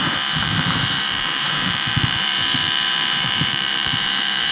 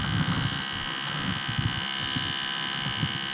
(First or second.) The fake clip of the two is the first